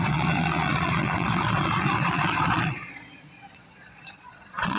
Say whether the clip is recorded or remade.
remade